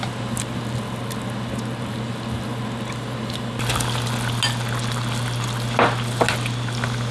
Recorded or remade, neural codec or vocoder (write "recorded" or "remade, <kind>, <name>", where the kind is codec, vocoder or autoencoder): recorded